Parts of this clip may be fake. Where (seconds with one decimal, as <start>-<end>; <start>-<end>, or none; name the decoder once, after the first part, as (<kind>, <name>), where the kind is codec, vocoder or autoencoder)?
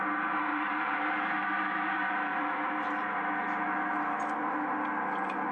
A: 0.5-3.1 (vocoder, BigVGAN v2)